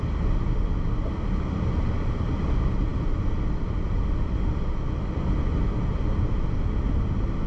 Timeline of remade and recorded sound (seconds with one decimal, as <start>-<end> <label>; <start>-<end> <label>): 0.0-7.5 recorded